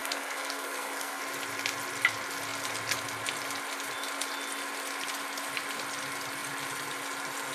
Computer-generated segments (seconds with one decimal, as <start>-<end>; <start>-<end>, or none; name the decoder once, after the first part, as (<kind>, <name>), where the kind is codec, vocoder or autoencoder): 0.0-1.2 (codec, SNAC)

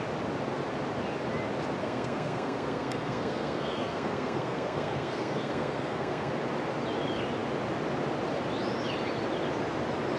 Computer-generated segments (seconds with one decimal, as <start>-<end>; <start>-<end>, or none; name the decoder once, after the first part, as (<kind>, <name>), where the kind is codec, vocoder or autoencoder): 1.8-6.3 (codec, SNAC)

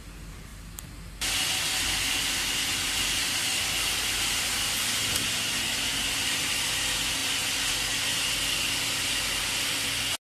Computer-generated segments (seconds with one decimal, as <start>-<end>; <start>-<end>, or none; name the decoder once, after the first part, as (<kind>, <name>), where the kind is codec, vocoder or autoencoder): none

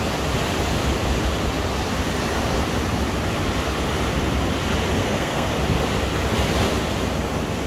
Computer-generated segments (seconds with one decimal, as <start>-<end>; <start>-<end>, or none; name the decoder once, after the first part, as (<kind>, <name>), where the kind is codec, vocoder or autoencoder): 5.0-5.5 (codec, SNAC)